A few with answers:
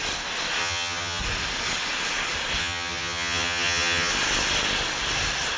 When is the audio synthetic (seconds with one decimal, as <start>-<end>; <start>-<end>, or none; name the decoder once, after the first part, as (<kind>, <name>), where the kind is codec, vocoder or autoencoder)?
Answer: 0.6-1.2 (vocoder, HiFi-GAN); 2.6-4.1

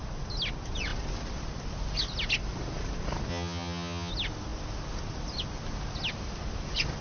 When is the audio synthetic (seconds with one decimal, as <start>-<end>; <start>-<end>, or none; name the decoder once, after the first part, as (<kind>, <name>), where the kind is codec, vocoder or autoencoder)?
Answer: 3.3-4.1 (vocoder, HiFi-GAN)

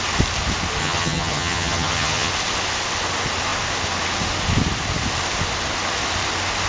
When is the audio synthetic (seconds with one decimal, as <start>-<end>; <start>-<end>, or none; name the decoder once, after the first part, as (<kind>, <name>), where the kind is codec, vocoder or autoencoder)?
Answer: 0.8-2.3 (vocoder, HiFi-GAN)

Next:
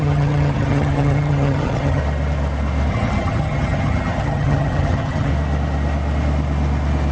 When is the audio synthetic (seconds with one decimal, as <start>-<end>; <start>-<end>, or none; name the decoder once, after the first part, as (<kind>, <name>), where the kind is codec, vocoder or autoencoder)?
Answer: 0.0-2.0 (vocoder, HiFi-GAN); 2.9-5.3